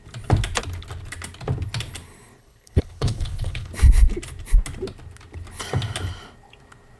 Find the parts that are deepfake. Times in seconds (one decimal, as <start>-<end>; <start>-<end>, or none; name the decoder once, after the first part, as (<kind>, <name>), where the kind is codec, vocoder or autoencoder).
2.4-3.7 (codec, HILCodec)